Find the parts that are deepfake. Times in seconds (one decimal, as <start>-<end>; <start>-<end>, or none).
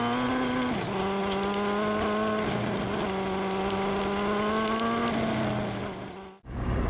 none